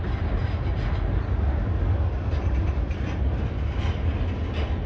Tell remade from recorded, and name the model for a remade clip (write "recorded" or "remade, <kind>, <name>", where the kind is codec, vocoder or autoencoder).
recorded